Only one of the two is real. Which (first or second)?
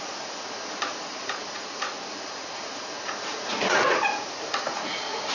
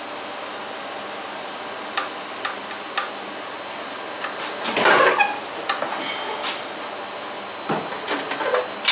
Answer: second